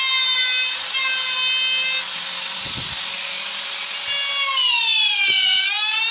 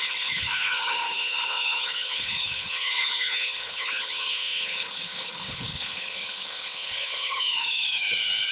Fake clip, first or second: second